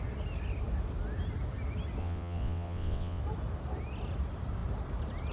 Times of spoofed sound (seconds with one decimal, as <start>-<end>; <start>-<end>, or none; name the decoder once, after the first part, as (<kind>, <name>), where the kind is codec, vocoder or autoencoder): 2.0-3.2 (vocoder, WaveNeXt)